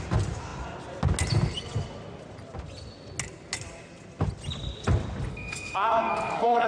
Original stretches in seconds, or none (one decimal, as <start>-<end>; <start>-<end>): 0.0-5.3